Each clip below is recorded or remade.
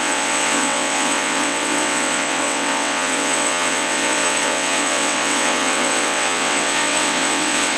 remade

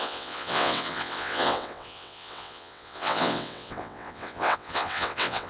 remade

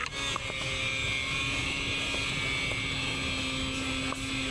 recorded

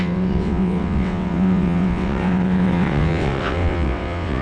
remade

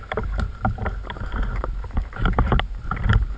recorded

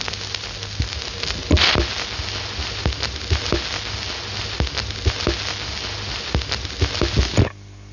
recorded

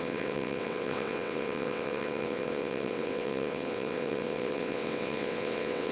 remade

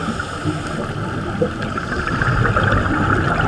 recorded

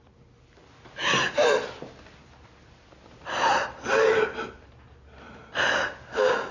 recorded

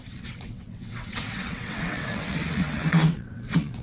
remade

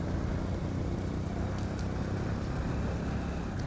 recorded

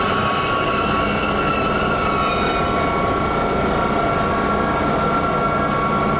recorded